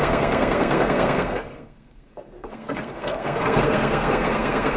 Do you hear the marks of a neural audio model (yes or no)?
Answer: yes